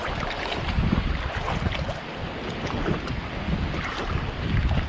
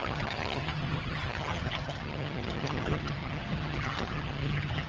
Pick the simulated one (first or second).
second